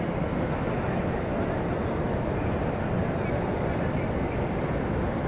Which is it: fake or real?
real